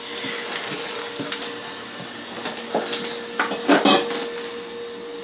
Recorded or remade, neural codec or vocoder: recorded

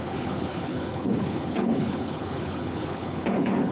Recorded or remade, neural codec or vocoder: remade, codec, HILCodec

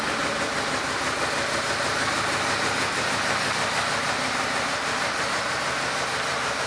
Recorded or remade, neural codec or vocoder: recorded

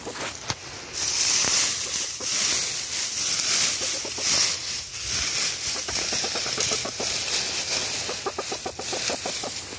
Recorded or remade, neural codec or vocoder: recorded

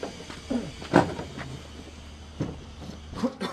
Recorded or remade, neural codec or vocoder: recorded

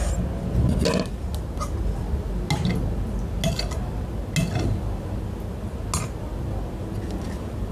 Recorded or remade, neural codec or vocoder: recorded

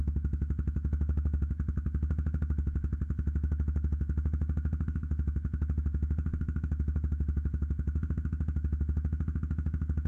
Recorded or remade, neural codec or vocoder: remade, autoencoder, DAC-VAE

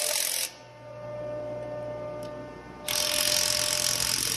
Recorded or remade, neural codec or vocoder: recorded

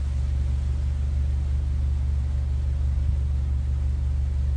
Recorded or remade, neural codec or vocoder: recorded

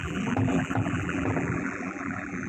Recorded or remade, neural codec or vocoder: remade, vocoder, BigVGAN v2